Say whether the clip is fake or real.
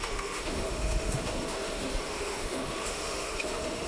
fake